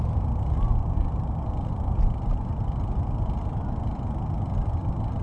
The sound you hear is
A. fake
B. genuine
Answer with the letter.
B